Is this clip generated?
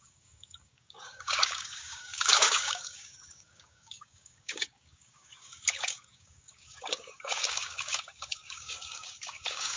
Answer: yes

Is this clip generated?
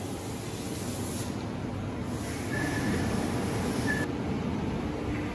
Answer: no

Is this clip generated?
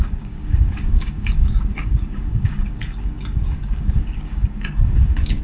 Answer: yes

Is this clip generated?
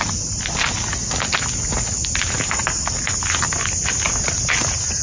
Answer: no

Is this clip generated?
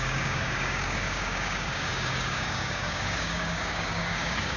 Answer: yes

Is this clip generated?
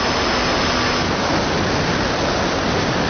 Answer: no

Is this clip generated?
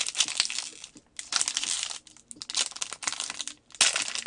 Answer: no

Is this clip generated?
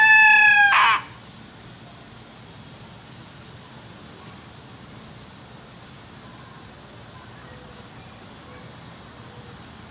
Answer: no